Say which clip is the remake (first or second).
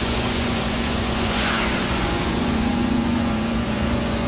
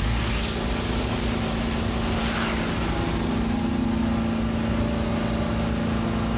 first